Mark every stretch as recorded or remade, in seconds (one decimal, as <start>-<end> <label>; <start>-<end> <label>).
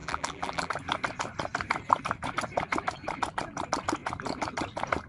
0.0-0.7 remade; 0.7-5.1 recorded